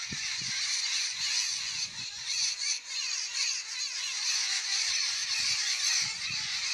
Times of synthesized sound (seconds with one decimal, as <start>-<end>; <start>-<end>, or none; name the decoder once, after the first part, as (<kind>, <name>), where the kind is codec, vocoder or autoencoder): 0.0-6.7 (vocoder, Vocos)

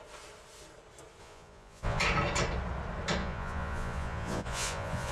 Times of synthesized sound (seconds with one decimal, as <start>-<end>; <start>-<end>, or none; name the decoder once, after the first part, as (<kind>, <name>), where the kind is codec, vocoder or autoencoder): 1.2-2.0 (vocoder, Vocos); 3.2-5.1

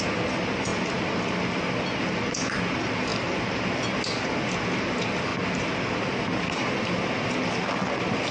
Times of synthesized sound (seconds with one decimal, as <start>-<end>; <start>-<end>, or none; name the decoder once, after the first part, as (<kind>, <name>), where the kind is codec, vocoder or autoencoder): none